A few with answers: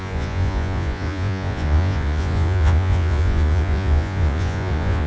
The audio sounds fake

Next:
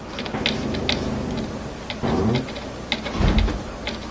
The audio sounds real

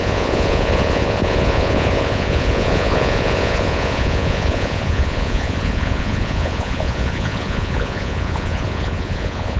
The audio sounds fake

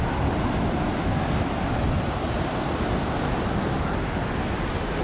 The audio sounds real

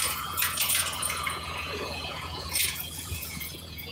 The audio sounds fake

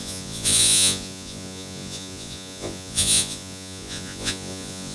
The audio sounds fake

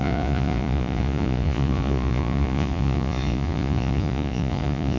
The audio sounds fake